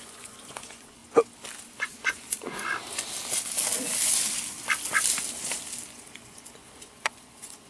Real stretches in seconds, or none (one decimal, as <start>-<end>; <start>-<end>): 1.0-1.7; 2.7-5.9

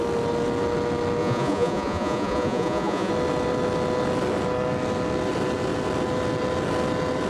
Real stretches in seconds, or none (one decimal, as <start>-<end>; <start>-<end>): 0.0-1.2; 3.1-7.3

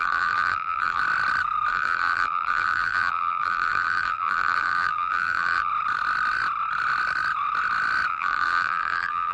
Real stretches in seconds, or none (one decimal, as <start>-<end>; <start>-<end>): 1.0-1.7; 5.7-8.1

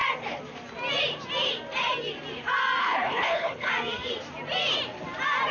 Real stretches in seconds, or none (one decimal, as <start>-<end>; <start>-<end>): 0.0-2.8; 3.7-5.5